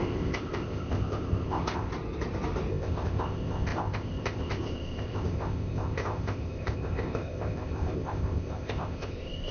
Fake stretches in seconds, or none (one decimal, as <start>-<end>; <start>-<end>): 0.0-1.9; 2.7-9.5